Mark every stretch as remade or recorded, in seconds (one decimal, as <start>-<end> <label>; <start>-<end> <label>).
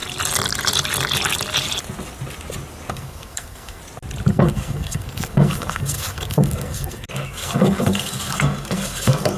0.0-2.9 recorded; 2.9-3.8 remade; 3.8-4.3 recorded; 4.3-9.4 remade